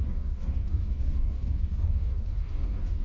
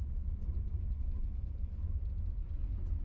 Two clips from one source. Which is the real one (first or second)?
second